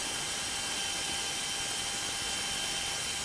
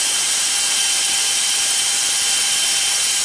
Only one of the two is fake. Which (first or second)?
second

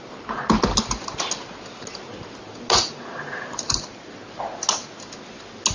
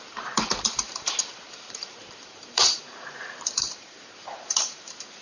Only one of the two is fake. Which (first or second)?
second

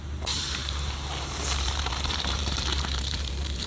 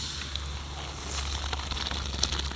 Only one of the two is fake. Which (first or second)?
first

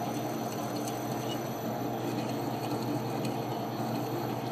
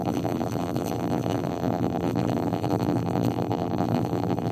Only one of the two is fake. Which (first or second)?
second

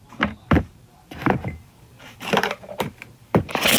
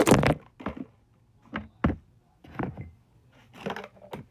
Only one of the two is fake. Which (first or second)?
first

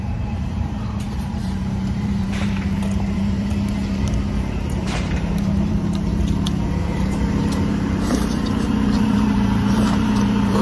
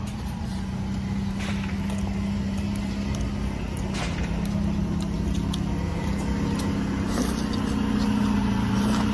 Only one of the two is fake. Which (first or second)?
first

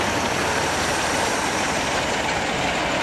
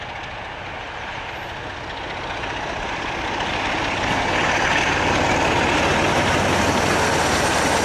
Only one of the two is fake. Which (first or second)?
first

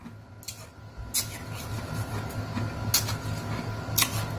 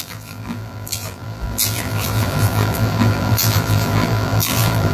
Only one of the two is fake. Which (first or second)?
second